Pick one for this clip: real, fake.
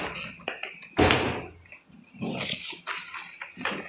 real